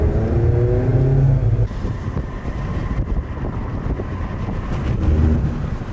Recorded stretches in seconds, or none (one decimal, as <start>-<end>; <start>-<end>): 0.0-5.9